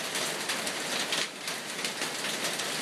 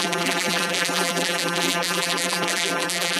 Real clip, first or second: first